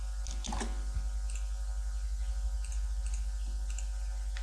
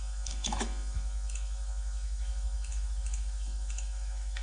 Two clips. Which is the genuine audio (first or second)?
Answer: first